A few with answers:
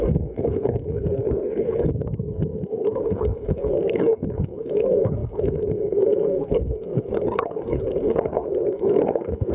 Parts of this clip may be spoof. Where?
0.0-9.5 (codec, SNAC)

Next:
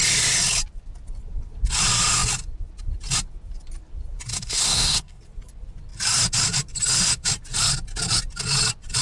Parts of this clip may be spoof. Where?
4.3-5.2 (codec, SNAC)

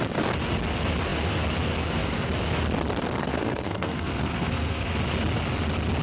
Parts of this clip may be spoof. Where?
3.2-4.9 (codec, SNAC)

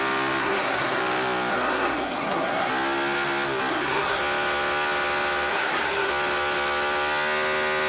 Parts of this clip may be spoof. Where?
0.4-1.0 (codec, SNAC); 1.5-2.7; 3.7-4.2; 5.5-6.1